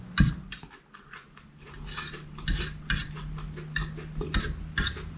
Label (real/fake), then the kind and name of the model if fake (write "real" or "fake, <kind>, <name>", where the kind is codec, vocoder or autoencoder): real